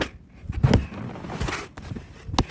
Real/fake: real